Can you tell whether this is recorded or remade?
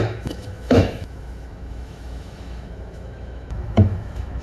remade